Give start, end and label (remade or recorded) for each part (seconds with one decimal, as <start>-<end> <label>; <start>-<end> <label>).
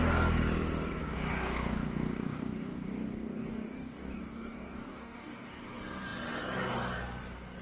0.0-1.0 recorded; 1.0-5.6 remade; 5.6-7.6 recorded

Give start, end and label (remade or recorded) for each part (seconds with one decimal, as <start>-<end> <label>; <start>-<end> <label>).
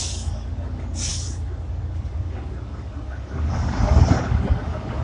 0.0-5.0 remade